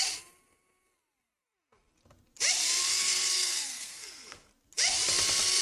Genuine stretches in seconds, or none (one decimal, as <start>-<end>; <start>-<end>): 0.0-2.8; 4.5-5.6